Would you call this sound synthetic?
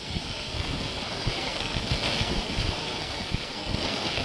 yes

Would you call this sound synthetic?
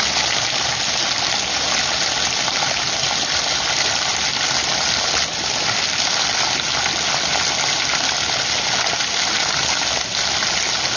no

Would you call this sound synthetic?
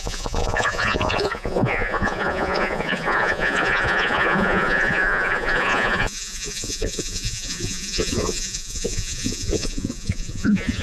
yes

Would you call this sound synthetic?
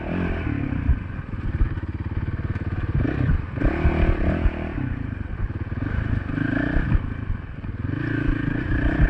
no